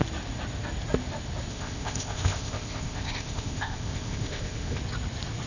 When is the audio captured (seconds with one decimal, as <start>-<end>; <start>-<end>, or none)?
0.0-1.5; 4.8-5.5